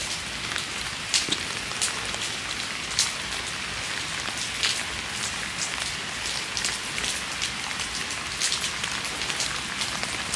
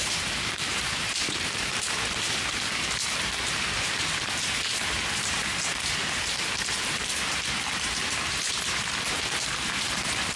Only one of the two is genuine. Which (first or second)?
first